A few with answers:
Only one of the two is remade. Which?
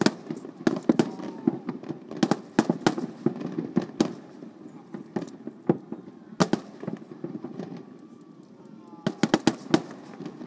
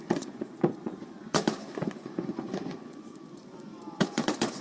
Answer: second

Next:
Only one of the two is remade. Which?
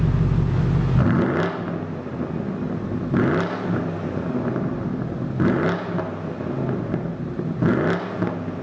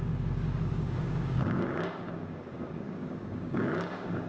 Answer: second